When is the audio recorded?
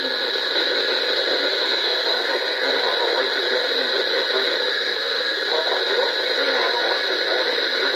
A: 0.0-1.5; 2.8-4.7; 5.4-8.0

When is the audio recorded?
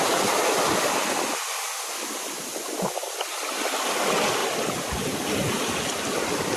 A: 0.0-6.6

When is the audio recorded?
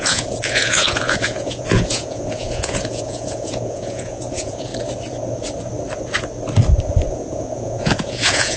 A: 4.7-7.1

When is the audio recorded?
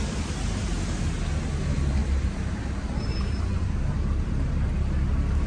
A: 0.0-2.0; 4.5-5.5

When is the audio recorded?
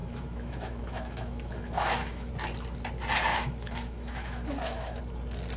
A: 2.3-3.3; 5.0-5.6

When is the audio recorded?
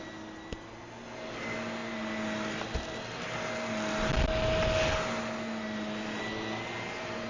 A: 0.0-7.3